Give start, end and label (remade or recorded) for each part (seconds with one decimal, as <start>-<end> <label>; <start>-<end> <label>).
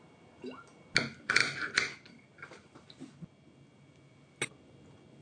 0.0-5.2 recorded